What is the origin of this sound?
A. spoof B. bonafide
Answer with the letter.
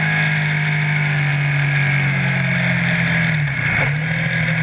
B